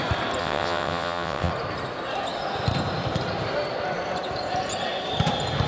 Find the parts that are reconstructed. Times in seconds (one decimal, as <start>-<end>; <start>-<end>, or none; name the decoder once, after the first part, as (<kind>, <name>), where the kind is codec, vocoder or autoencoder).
0.4-1.5 (vocoder, WaveNeXt)